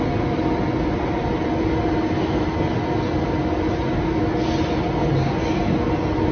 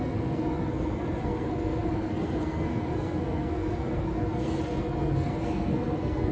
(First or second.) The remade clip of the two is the second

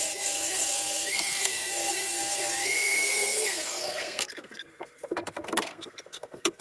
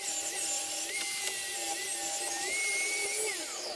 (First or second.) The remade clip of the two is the first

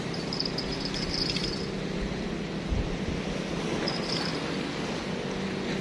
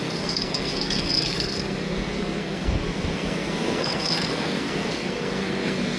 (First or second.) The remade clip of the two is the second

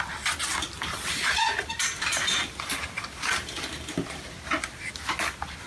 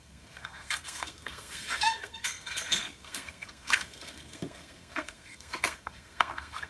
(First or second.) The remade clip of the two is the second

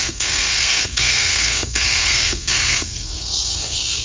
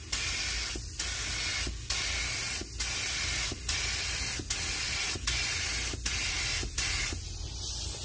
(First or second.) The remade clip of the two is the first